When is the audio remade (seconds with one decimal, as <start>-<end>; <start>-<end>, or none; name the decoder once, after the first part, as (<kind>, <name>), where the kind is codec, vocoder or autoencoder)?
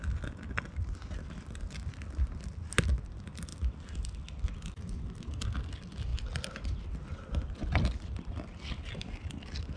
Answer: none